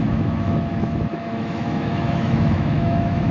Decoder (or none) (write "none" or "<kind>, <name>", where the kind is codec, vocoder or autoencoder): autoencoder, DAC-VAE